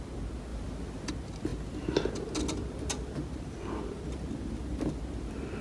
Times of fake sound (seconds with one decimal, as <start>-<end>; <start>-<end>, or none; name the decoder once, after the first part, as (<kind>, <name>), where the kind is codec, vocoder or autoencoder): none